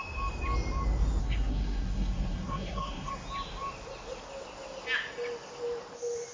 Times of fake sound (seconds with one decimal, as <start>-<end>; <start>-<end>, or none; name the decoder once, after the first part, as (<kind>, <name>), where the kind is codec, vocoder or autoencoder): 1.2-3.1 (codec, SNAC)